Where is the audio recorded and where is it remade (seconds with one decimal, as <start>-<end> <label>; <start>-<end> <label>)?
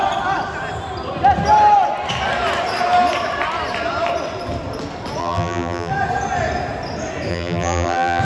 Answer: 0.0-5.2 recorded; 5.2-5.9 remade; 5.9-7.3 recorded; 7.3-8.2 remade